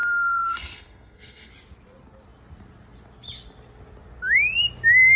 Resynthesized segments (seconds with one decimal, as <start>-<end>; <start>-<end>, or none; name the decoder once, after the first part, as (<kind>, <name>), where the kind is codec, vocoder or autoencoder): 0.0-1.5 (codec, SNAC)